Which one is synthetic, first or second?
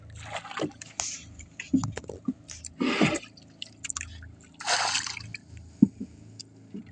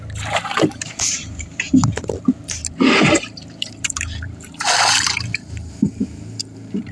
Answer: second